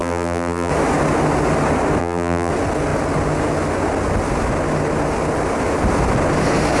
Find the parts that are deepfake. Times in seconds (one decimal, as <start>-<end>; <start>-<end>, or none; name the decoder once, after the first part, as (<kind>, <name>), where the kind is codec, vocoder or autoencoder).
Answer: 0.0-0.7 (vocoder, BigVGAN v2); 2.0-2.5